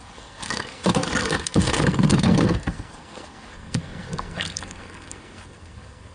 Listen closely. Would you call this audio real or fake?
fake